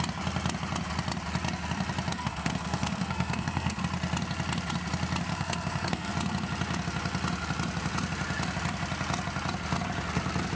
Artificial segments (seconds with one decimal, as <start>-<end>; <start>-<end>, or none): 2.1-3.8; 5.3-6.1